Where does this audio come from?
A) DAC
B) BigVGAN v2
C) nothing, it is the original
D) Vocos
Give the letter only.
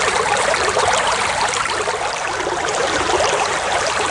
B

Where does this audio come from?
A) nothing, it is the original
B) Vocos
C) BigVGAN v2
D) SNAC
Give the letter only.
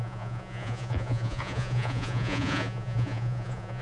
B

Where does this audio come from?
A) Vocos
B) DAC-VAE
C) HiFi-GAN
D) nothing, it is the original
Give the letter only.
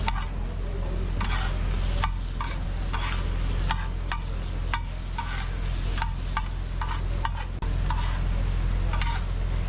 D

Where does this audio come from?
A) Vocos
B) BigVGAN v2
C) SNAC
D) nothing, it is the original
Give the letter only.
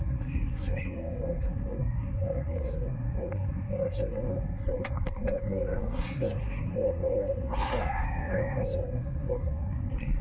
C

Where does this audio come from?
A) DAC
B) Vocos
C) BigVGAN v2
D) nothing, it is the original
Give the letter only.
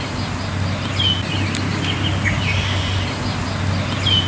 D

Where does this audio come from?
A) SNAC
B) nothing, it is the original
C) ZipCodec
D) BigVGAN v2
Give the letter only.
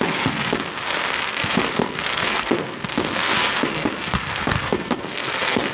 A